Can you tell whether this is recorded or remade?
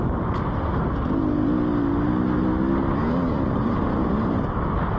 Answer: recorded